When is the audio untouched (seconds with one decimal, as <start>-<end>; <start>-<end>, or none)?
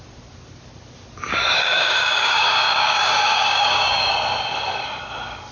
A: 0.0-1.3; 4.1-5.5